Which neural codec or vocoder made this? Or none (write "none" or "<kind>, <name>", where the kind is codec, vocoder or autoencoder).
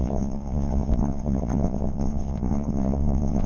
vocoder, WaveNeXt